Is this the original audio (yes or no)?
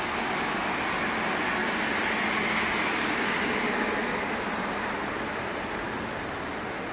yes